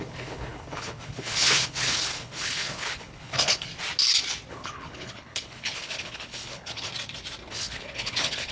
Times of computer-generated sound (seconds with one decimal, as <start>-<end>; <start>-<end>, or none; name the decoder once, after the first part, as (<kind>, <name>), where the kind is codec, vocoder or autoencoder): 0.0-3.7 (codec, HILCodec); 4.5-6.9; 7.5-8.5